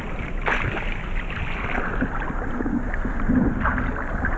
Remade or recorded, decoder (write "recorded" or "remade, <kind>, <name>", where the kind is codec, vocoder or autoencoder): recorded